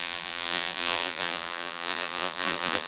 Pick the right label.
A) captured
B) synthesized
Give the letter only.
B